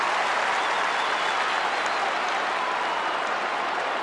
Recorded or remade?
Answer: recorded